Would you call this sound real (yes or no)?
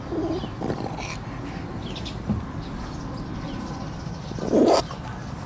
yes